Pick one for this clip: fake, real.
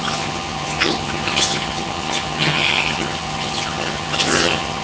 fake